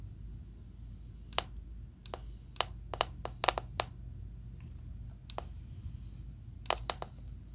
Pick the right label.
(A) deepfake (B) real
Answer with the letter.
B